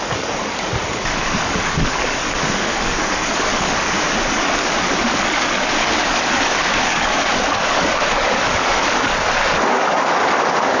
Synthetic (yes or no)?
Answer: yes